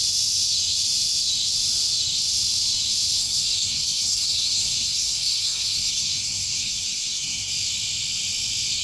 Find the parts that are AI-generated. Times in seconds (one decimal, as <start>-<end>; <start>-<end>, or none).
3.2-7.5

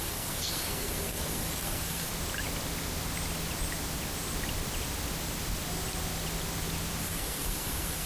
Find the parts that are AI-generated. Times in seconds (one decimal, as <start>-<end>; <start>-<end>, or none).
0.0-2.1; 7.0-8.1

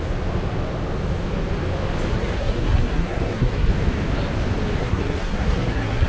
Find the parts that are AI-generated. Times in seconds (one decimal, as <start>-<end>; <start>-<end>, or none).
2.1-3.7; 4.8-6.1

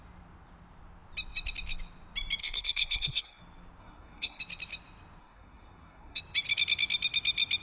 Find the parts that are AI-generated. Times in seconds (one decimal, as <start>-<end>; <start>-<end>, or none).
2.4-3.4; 3.8-4.4; 5.2-6.2

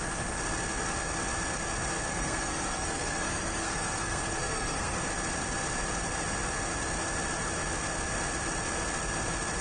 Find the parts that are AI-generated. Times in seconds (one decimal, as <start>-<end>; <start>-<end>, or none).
2.1-5.0

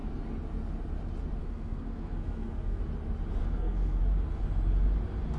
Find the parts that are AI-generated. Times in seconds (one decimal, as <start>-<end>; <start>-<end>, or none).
1.4-2.8; 3.4-4.0